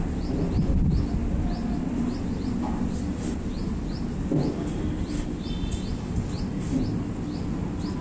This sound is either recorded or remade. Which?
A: recorded